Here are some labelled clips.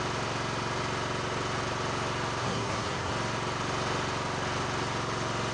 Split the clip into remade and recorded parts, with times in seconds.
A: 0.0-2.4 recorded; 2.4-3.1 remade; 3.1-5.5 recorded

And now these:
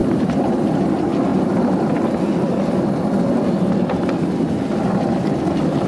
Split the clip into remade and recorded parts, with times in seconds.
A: 0.0-0.8 remade; 0.8-5.9 recorded

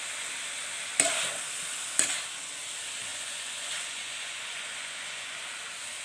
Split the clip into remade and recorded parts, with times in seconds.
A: 0.0-3.1 recorded; 3.1-5.5 remade; 5.5-6.0 recorded

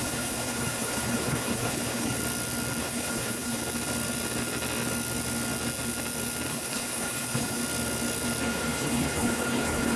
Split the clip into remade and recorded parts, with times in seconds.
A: 0.0-2.2 remade; 2.2-2.8 recorded; 2.8-3.6 remade; 3.6-6.5 recorded; 6.5-7.6 remade; 7.6-8.5 recorded; 8.5-10.0 remade

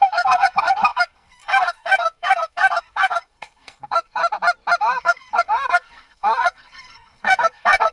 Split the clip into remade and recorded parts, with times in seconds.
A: 0.0-4.2 remade; 4.2-4.8 recorded; 4.8-7.9 remade